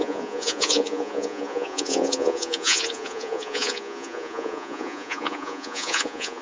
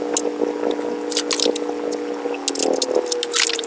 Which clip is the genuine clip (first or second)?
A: second